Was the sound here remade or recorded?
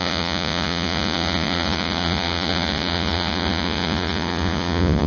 remade